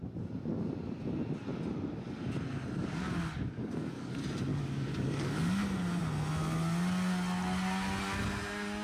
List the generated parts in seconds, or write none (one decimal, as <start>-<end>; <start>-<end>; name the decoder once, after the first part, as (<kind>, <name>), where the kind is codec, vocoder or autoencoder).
2.8-4.1 (codec, DAC); 4.5-5.6